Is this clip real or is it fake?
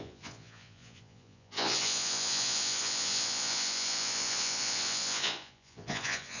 fake